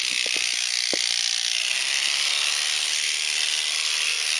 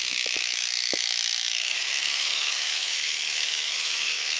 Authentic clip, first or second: first